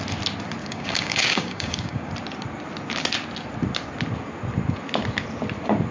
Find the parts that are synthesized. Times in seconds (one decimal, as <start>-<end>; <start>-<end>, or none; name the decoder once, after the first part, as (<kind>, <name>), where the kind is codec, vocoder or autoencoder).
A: 0.6-2.1 (codec, DAC)